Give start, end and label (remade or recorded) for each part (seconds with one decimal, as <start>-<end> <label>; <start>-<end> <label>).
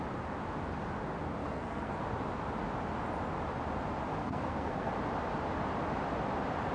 0.0-1.4 recorded; 1.4-2.0 remade; 2.0-4.2 recorded; 4.2-4.9 remade; 4.9-6.7 recorded